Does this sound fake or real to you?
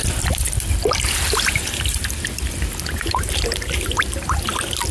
real